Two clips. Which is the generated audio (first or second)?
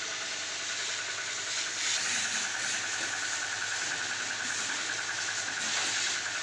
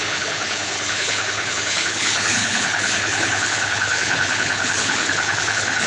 second